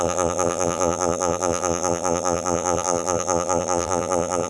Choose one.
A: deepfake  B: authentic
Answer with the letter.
A